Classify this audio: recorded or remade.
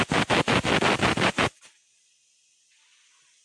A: recorded